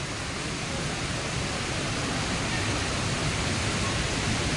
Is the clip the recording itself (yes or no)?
yes